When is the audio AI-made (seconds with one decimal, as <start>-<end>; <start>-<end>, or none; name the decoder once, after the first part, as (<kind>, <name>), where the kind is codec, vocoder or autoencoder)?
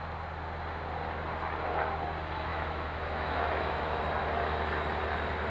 2.5-4.0 (autoencoder, DAC-VAE)